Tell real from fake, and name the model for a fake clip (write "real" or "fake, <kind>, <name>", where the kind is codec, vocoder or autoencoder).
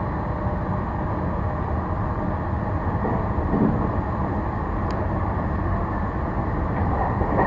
real